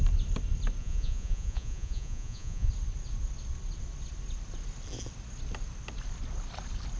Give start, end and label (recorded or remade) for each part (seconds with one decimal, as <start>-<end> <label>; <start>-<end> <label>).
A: 0.0-0.8 recorded; 0.8-2.7 remade; 2.7-7.0 recorded